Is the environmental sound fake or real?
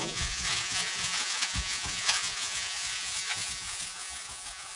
fake